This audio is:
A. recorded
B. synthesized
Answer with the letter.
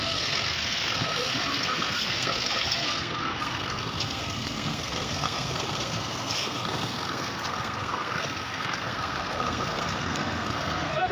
B